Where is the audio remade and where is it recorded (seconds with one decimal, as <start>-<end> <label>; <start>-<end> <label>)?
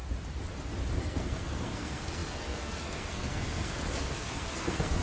0.0-1.0 recorded; 1.0-5.0 remade